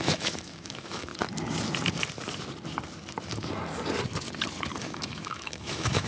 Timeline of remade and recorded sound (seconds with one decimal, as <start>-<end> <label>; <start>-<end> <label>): 0.0-1.1 remade; 1.1-4.8 recorded; 4.8-6.1 remade